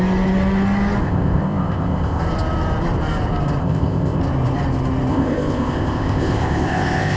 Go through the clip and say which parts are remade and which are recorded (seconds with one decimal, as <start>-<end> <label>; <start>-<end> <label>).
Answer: 0.0-1.0 recorded; 1.0-2.2 remade; 2.2-3.6 recorded; 3.6-4.2 remade; 4.2-5.1 recorded; 5.1-7.2 remade